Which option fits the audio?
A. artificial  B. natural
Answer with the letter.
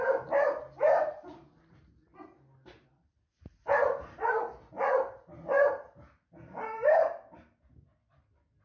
B